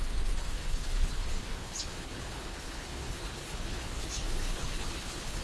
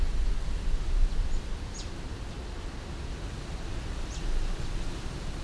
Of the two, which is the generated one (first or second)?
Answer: first